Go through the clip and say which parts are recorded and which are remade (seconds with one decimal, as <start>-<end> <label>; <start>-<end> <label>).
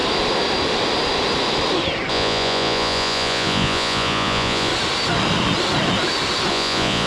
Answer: 0.0-2.1 recorded; 2.1-4.7 remade; 4.7-6.5 recorded; 6.5-7.1 remade